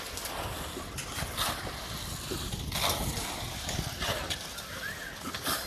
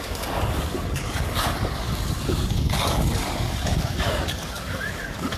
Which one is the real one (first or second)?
first